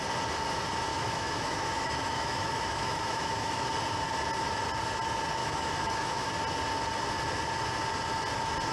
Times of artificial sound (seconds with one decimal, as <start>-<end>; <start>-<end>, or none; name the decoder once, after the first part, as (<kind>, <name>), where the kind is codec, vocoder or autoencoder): 0.9-3.7 (autoencoder, DAC-VAE); 5.4-6.3